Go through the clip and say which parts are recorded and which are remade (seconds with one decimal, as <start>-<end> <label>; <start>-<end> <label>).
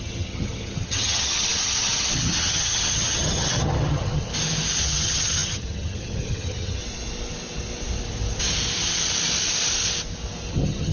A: 0.0-4.3 remade; 4.3-4.8 recorded; 4.8-6.8 remade; 6.8-10.5 recorded; 10.5-10.9 remade